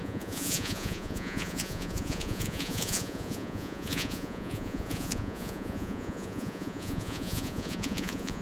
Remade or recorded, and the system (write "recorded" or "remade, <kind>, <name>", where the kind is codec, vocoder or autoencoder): remade, vocoder, Vocos